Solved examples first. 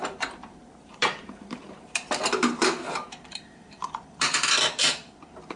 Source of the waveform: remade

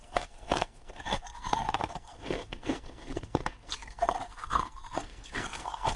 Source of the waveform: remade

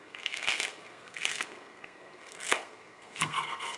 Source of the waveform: remade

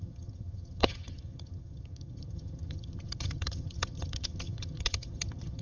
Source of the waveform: remade